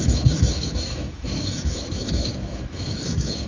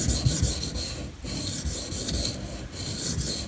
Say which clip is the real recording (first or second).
second